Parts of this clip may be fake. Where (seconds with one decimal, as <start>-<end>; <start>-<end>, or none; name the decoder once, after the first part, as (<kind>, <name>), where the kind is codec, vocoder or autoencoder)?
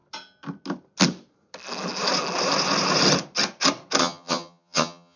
4.0-5.2 (vocoder, HiFi-GAN)